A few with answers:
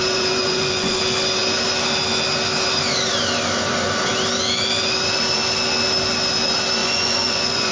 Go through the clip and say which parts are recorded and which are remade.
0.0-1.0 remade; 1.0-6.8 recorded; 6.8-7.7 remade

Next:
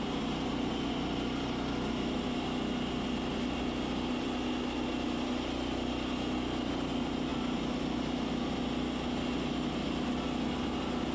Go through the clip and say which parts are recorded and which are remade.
0.0-11.1 recorded

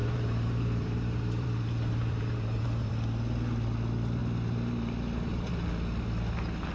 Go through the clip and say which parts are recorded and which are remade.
0.0-2.9 remade; 2.9-4.2 recorded; 4.2-5.5 remade; 5.5-6.7 recorded

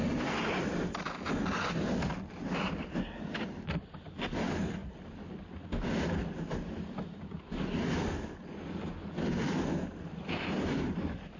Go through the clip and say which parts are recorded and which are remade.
0.0-11.4 recorded